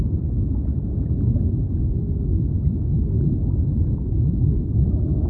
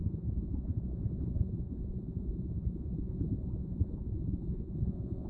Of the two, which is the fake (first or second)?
second